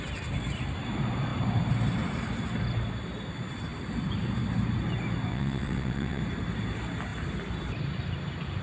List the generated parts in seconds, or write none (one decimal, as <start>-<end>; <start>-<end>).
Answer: 5.3-6.2